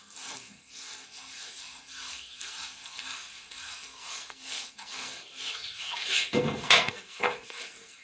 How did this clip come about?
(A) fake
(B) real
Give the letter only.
A